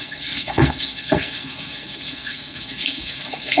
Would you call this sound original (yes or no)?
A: no